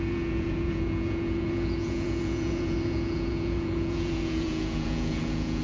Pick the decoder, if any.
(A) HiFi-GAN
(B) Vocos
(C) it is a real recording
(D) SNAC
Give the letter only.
B